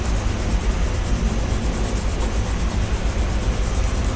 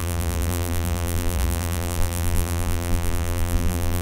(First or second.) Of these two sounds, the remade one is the second